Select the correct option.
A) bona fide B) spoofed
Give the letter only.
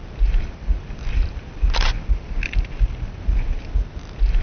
A